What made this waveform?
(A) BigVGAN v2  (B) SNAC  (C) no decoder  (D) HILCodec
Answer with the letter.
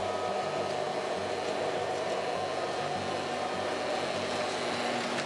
C